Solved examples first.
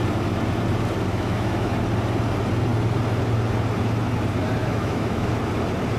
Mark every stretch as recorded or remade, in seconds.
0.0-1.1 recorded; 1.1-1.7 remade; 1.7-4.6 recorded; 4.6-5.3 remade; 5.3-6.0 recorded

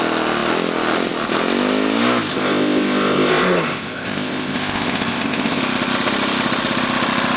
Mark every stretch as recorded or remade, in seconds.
0.0-2.3 recorded; 2.3-5.6 remade; 5.6-7.4 recorded